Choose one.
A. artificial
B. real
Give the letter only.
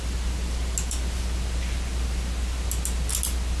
B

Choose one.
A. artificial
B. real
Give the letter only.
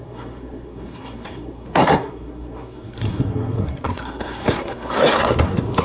A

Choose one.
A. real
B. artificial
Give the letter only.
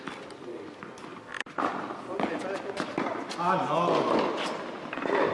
A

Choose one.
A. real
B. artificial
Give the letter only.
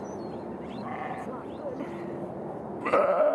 A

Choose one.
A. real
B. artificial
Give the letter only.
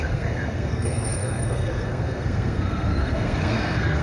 B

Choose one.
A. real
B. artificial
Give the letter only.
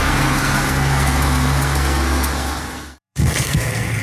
B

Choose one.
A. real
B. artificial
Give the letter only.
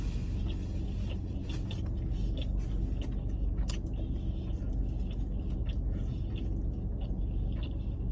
A